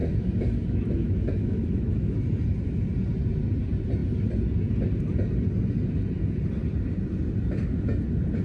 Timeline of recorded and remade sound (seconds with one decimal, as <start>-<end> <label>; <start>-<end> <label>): 0.0-2.2 remade; 2.2-8.4 recorded